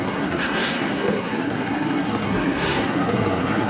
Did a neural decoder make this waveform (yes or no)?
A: yes